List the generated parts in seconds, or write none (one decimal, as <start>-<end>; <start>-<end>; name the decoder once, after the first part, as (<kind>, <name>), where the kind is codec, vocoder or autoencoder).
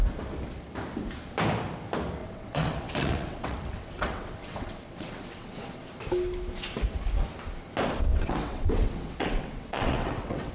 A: 2.2-5.9 (vocoder, WaveNeXt); 8.1-10.5